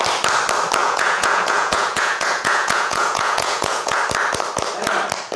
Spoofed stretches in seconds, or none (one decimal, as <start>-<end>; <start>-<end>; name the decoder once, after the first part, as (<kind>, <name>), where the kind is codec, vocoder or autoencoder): 0.8-4.0 (vocoder, Vocos)